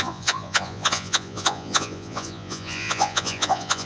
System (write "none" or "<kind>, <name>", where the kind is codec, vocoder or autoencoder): vocoder, Vocos